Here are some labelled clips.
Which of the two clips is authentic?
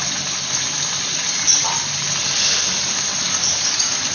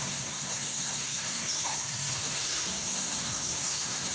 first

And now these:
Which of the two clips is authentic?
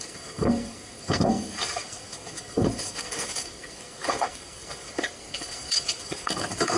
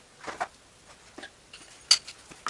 second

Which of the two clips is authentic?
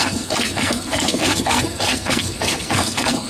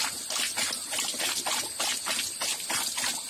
second